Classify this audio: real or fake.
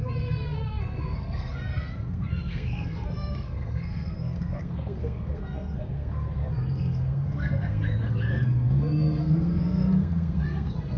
fake